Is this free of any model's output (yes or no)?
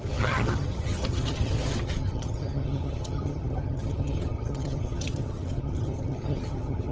no